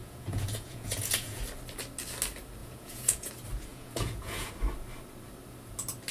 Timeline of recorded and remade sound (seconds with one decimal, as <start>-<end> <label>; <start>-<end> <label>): 0.0-1.4 remade; 1.4-2.6 recorded; 2.6-3.3 remade; 3.3-3.7 recorded; 3.7-4.5 remade; 4.5-6.1 recorded